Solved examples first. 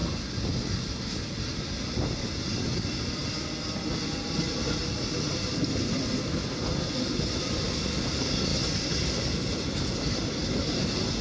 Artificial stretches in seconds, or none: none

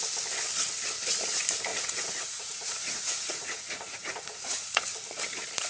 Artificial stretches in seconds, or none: 1.7-4.8 (vocoder, Vocos)

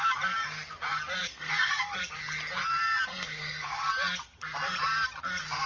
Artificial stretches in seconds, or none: 1.2-2.0 (codec, SNAC); 3.1-3.9